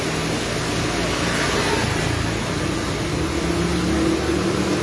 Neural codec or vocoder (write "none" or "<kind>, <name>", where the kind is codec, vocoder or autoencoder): none